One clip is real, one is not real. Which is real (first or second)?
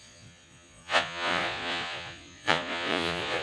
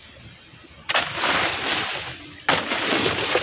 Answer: second